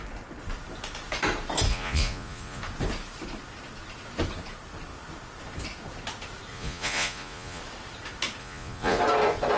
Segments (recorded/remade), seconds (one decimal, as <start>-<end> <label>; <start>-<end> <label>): 0.0-1.7 recorded; 1.7-2.6 remade; 2.6-6.5 recorded; 6.5-7.6 remade; 7.6-8.4 recorded; 8.4-9.0 remade; 9.0-9.6 recorded